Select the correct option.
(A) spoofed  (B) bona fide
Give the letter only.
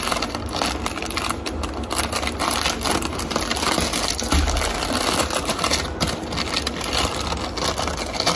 B